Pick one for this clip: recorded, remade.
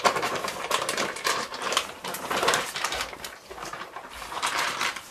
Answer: remade